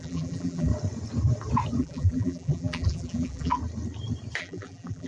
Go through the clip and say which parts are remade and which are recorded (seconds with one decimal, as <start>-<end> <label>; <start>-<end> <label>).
0.0-0.7 remade; 0.7-1.8 recorded; 1.8-3.6 remade; 3.6-4.4 recorded; 4.4-5.1 remade